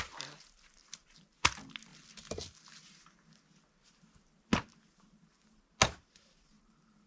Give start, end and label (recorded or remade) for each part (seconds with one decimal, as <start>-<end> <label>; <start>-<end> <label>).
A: 0.0-7.1 recorded

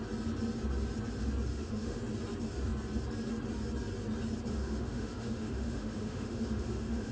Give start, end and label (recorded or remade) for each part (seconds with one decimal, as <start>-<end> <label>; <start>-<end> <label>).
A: 0.0-1.5 recorded; 1.5-2.0 remade; 2.0-4.5 recorded; 4.5-7.1 remade

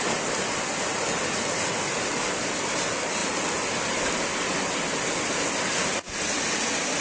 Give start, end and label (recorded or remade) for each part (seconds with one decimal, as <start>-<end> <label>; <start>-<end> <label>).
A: 0.0-7.0 recorded